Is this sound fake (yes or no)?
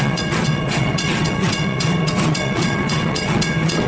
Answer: yes